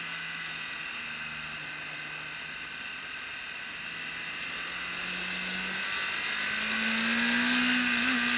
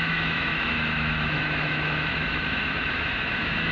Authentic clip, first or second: first